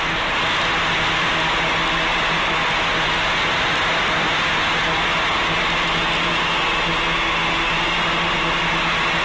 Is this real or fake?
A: real